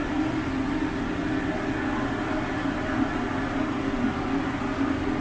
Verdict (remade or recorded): recorded